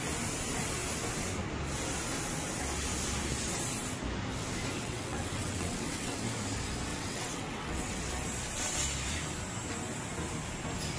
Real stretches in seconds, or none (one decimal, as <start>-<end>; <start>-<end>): 0.0-4.8; 6.2-6.9; 8.0-11.0